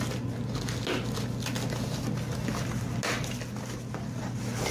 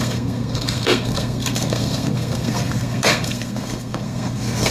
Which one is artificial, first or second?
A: second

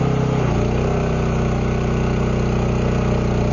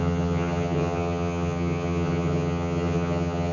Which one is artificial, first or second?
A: second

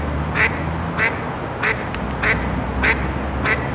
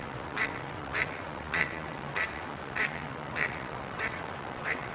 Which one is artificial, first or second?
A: second